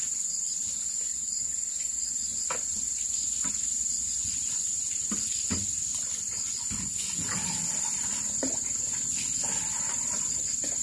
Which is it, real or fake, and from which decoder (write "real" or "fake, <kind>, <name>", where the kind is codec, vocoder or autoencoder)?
real